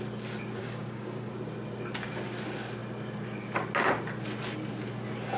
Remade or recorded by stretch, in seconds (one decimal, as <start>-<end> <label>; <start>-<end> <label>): 0.0-0.6 recorded; 0.6-1.3 remade; 1.3-5.4 recorded